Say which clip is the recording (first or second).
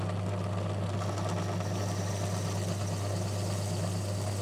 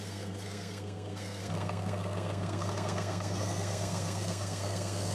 first